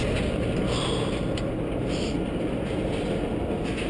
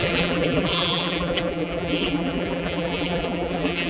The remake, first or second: second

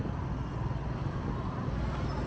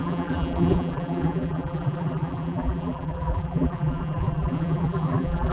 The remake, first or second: second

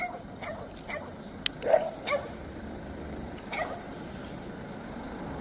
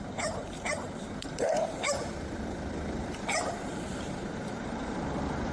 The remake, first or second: second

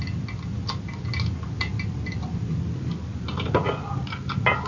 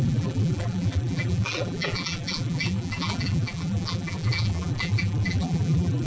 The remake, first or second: second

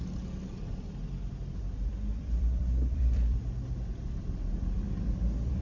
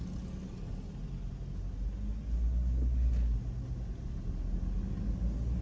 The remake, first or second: first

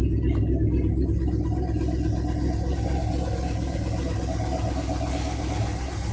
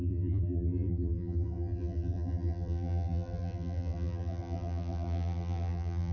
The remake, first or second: second